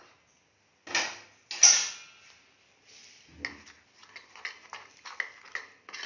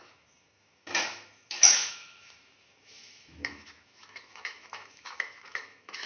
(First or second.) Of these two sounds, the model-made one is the second